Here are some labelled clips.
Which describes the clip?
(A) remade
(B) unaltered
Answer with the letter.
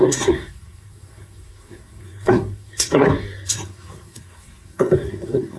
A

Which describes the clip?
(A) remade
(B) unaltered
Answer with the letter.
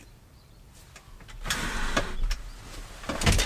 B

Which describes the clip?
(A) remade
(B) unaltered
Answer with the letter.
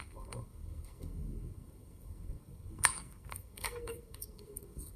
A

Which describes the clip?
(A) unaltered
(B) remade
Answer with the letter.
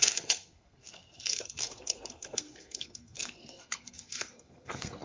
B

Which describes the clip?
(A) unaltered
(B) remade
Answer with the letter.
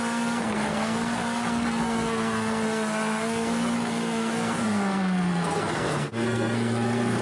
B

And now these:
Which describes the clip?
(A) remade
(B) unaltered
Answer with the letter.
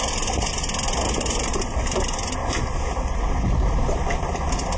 B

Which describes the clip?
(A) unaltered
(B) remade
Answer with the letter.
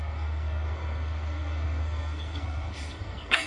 B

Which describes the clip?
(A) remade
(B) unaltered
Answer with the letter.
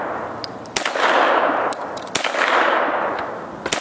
B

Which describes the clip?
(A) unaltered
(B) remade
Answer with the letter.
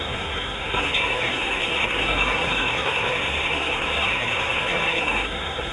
B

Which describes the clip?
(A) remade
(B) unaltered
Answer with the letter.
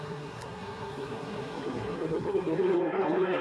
A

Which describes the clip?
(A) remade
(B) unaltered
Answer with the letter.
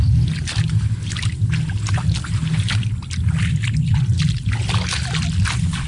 B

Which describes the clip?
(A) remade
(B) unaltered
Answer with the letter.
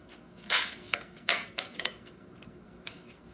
A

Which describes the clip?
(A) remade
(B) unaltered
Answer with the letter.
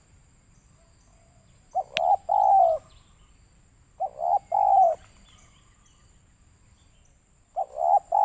B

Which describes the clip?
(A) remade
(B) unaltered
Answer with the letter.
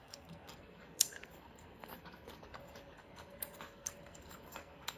A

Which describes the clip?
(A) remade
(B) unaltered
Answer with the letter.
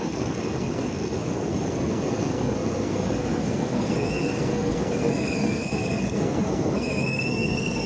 A